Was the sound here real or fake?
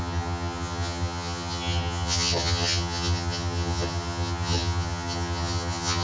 fake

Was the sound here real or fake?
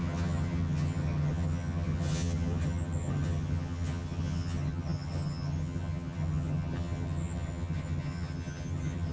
fake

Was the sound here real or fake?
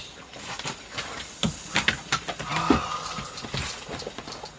real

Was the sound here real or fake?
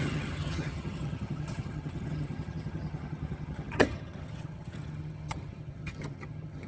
fake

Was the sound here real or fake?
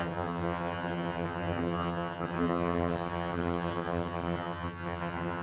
fake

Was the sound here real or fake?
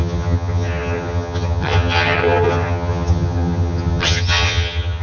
fake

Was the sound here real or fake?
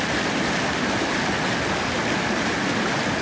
real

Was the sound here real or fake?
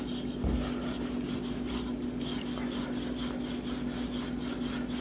real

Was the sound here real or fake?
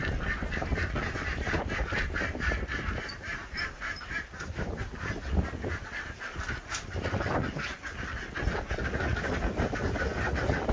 real